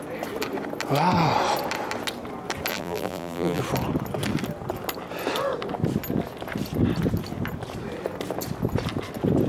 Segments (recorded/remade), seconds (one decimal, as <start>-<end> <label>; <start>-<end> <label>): 0.0-2.7 recorded; 2.7-3.6 remade; 3.6-9.5 recorded